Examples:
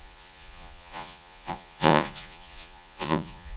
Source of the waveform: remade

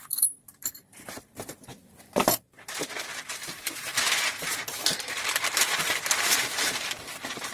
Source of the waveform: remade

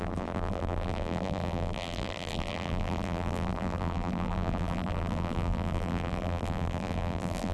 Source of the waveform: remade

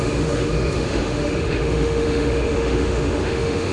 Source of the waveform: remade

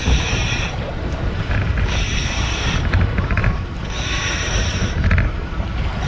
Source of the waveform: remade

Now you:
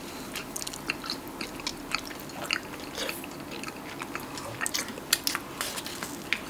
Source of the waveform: recorded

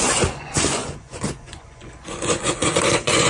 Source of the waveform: remade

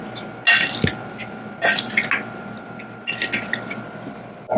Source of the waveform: recorded